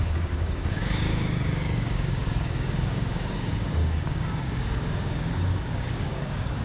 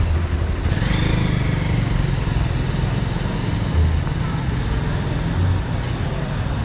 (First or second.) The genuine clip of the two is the second